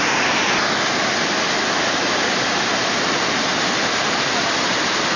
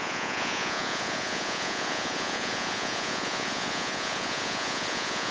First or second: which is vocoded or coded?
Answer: second